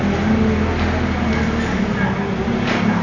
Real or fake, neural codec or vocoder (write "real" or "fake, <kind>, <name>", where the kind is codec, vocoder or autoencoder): real